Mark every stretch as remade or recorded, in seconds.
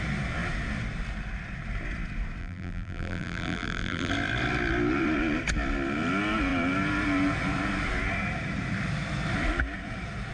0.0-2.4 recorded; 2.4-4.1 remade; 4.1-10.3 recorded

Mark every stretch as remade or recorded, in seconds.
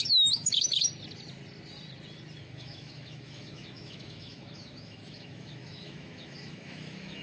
0.0-0.8 remade; 0.8-2.4 recorded; 2.4-7.2 remade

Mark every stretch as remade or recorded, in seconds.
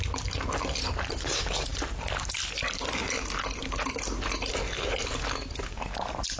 0.0-6.4 recorded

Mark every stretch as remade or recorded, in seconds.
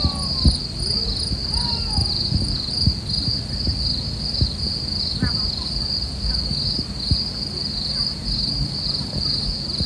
0.0-9.9 recorded